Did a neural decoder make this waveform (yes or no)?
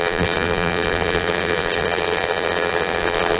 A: yes